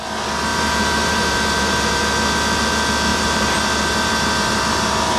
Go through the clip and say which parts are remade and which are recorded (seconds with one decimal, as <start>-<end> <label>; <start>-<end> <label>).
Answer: 0.0-0.5 recorded; 0.5-2.0 remade; 2.0-3.1 recorded; 3.1-5.2 remade